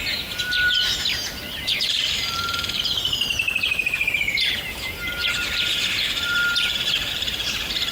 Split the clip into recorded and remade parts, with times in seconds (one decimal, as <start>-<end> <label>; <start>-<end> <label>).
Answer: 0.0-7.9 remade